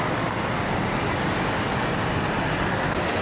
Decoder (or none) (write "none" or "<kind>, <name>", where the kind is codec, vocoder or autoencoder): none